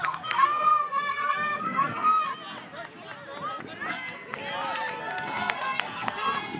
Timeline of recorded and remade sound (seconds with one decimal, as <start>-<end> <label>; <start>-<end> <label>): 0.0-2.3 remade; 2.3-3.9 recorded; 3.9-4.4 remade; 4.4-5.0 recorded; 5.0-6.6 remade